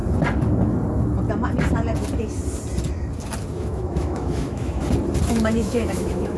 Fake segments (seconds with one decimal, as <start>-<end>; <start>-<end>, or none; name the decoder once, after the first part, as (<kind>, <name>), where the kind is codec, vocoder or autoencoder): 3.5-4.8 (autoencoder, DAC-VAE); 5.3-6.4